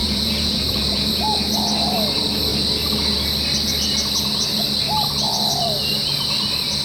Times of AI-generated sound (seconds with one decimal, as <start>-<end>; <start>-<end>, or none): 0.0-1.1